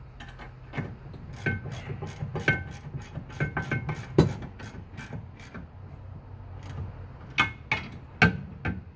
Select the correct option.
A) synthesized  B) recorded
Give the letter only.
B